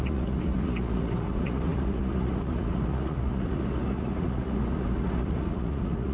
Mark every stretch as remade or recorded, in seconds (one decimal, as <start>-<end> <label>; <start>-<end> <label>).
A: 0.0-6.1 remade